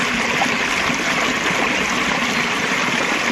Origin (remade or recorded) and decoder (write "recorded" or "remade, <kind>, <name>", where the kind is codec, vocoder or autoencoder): recorded